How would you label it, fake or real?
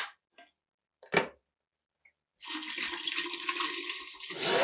real